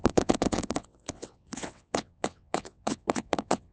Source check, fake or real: fake